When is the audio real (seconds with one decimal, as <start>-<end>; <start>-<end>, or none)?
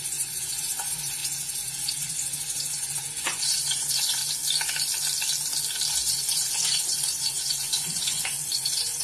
4.2-5.9